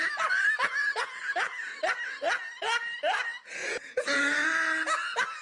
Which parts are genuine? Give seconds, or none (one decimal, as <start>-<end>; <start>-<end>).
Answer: 0.0-0.6; 1.2-3.6; 4.2-5.4